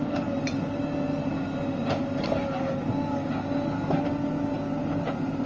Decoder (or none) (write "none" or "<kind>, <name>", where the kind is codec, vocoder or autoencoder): none